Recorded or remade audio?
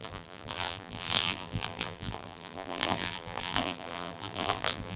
remade